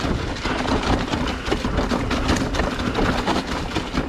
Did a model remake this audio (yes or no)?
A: no